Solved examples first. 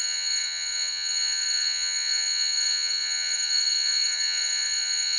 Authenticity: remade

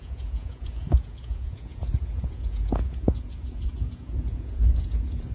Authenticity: remade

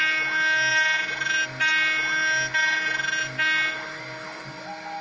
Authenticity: recorded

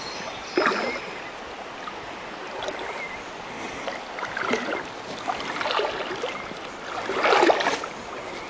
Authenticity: recorded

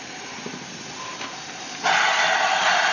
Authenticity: recorded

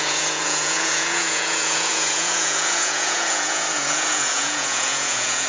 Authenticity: remade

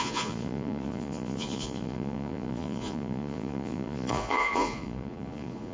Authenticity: remade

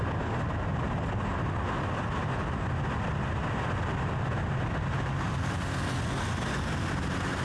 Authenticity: recorded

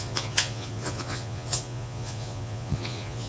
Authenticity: remade